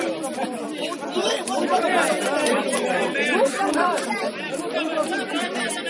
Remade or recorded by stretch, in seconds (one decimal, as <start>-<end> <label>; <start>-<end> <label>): 0.0-1.2 recorded; 1.2-4.7 remade; 4.7-5.9 recorded